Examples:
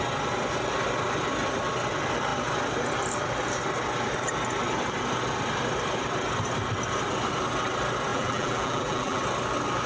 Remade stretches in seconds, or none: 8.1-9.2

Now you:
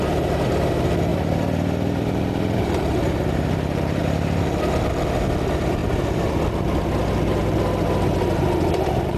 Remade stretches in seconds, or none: 1.1-4.0; 5.8-7.6